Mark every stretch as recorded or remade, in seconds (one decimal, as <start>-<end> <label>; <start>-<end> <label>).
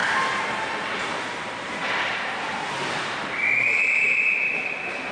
0.0-5.1 recorded